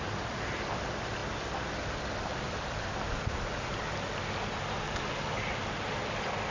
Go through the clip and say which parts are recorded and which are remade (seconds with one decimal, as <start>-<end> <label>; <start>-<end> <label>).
0.0-6.5 recorded